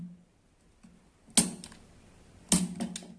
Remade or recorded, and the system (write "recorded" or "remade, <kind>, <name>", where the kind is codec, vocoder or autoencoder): recorded